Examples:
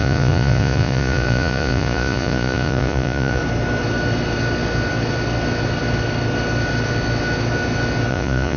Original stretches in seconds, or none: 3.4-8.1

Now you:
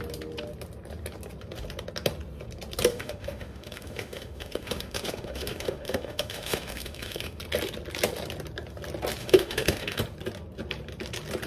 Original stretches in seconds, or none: 0.0-2.9; 7.4-9.2; 10.0-11.5